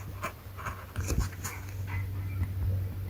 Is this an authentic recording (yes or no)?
yes